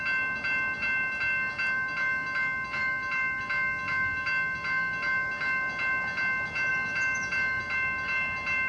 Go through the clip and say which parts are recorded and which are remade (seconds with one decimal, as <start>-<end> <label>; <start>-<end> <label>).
0.0-8.7 recorded